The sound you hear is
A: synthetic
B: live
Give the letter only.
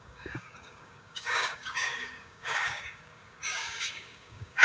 A